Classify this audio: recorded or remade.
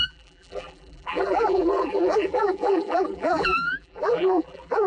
remade